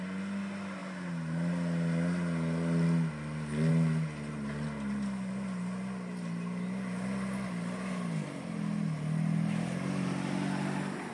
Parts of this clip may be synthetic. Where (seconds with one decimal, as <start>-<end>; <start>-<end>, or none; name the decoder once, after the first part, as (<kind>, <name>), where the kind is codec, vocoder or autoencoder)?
none